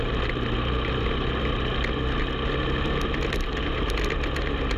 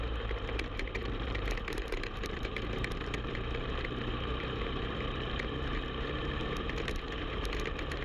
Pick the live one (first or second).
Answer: first